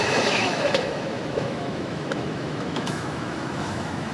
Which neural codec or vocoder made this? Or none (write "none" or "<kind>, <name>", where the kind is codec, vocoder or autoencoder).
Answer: autoencoder, DAC-VAE